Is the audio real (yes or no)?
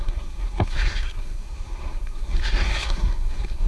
no